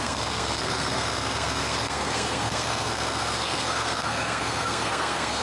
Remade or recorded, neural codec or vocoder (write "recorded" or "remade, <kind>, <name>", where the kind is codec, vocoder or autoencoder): remade, codec, SNAC